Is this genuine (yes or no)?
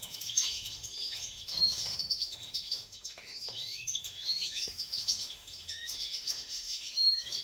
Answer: no